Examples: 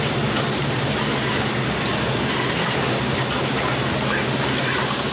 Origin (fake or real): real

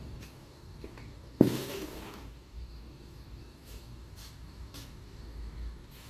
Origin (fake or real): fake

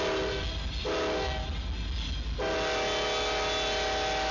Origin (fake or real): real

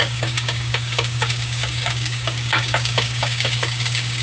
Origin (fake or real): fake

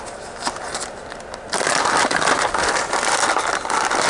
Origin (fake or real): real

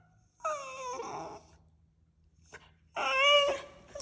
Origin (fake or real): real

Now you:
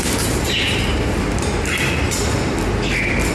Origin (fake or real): real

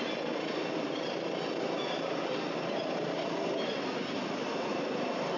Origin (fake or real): real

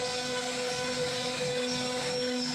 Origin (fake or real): fake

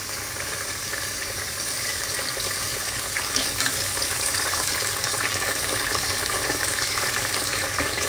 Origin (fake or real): fake